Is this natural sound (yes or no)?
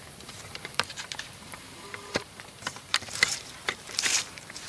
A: no